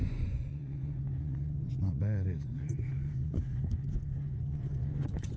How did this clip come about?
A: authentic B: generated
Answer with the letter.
B